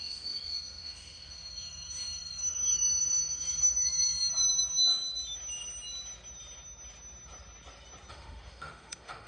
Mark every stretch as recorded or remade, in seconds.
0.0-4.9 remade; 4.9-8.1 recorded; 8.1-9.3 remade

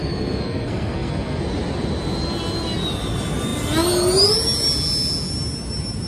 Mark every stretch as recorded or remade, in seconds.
0.0-1.4 remade; 1.4-6.1 recorded

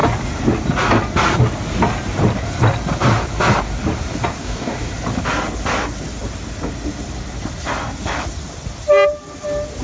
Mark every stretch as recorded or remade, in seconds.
0.0-4.4 recorded; 4.4-4.9 remade; 4.9-9.8 recorded